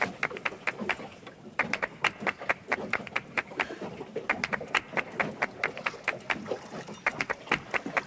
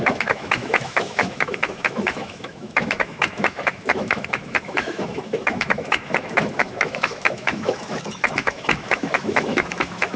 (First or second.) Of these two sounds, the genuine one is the first